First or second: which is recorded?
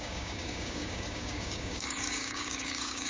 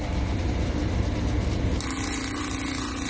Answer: second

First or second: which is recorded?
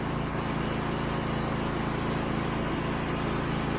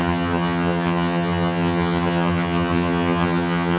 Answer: first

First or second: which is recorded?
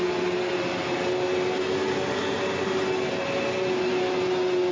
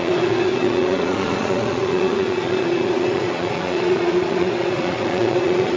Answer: first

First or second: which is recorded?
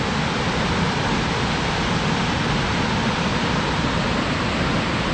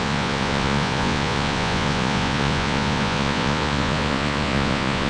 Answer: first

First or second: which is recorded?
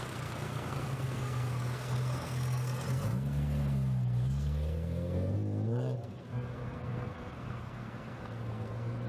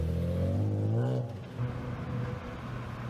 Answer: second